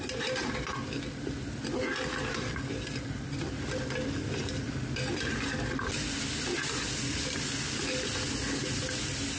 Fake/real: real